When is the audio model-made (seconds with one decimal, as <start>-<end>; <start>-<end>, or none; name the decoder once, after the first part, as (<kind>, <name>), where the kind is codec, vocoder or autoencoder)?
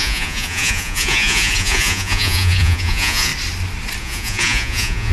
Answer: 0.0-3.3 (vocoder, Vocos); 4.0-5.1